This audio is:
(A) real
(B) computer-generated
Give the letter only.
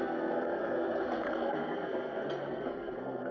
B